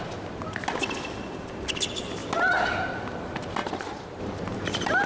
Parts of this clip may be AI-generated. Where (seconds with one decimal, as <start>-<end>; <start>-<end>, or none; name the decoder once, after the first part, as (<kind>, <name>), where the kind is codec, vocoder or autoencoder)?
3.6-4.2 (vocoder, BigVGAN v2)